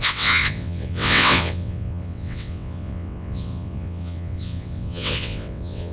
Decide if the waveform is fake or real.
fake